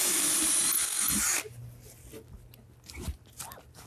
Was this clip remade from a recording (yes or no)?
no